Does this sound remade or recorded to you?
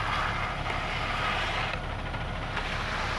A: recorded